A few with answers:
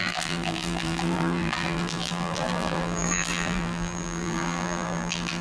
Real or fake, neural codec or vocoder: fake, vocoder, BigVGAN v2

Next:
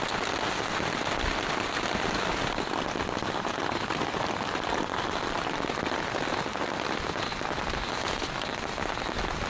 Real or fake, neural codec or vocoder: real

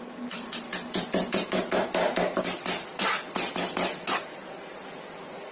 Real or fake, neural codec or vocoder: real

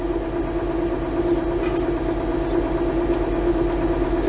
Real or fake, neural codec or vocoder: real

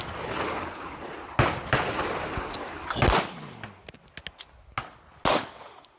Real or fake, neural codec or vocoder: real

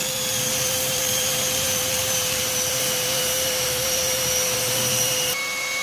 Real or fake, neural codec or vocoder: fake, vocoder, BigVGAN v2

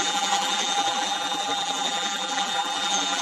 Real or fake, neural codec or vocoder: fake, vocoder, BigVGAN v2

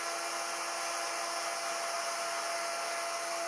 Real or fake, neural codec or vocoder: real